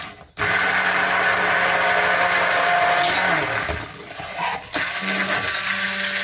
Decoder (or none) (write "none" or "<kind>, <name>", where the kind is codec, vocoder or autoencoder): none